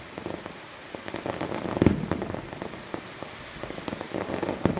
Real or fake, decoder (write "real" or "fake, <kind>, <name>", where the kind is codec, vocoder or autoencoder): real